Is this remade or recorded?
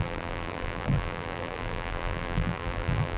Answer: remade